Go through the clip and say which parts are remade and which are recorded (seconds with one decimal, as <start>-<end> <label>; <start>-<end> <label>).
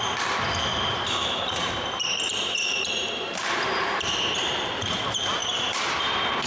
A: 0.0-0.7 recorded; 0.7-3.4 remade; 3.4-5.4 recorded; 5.4-6.5 remade